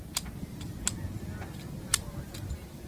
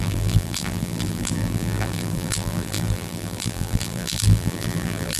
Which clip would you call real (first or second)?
first